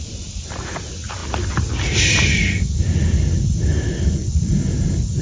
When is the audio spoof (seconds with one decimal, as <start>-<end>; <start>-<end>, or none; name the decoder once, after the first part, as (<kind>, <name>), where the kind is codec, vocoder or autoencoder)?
0.0-1.2 (vocoder, BigVGAN v2); 4.3-5.2